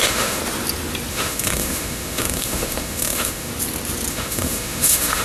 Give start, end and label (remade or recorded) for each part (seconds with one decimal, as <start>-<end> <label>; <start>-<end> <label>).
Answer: 0.0-0.4 remade; 0.4-1.1 recorded; 1.1-3.5 remade; 3.5-4.1 recorded; 4.1-5.2 remade